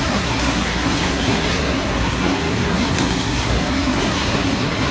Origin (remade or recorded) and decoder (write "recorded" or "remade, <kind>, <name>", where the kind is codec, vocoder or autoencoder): remade, codec, SNAC